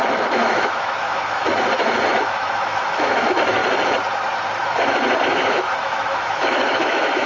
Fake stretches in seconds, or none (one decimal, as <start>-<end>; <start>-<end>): 0.0-1.5; 2.1-3.6; 5.3-7.3